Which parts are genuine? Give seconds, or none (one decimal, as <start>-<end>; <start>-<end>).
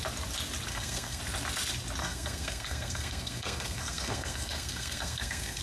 0.0-0.7; 1.2-2.0